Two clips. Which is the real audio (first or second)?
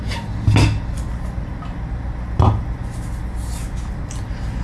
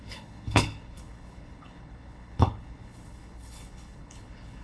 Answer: first